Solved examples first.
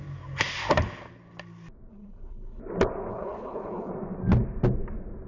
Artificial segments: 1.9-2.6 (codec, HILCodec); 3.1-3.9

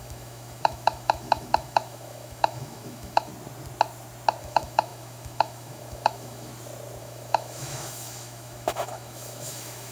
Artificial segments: 0.0-3.3 (autoencoder, DAC-VAE); 4.4-6.5; 7.0-9.9

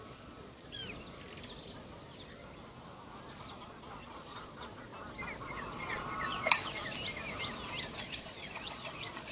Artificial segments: 0.0-0.8 (vocoder, Vocos); 3.5-4.9; 5.4-6.8; 8.0-9.3

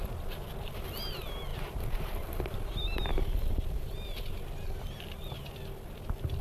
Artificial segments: none

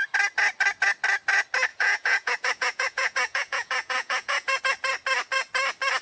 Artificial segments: 1.7-4.6 (vocoder, Vocos)

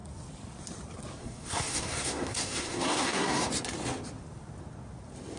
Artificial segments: 1.2-3.5 (codec, SNAC)

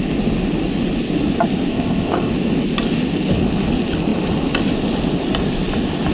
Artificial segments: 1.7-2.3 (codec, ZipCodec)